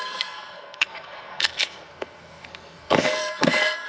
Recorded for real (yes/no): no